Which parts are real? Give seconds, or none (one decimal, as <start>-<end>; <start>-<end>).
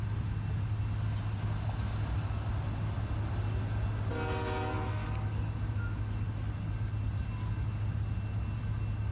0.0-5.0; 5.5-9.1